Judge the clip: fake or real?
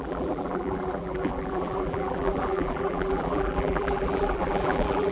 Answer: fake